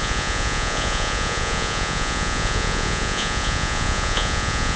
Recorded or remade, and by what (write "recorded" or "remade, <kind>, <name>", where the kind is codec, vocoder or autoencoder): remade, vocoder, Vocos